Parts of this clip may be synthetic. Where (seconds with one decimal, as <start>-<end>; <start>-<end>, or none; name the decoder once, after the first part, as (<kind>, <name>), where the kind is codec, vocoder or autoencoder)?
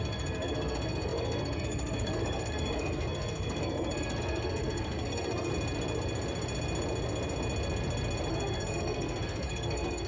0.0-5.5 (codec, SNAC); 8.3-10.1